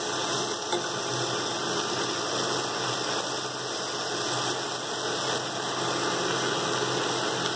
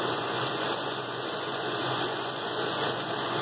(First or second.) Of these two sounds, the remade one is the second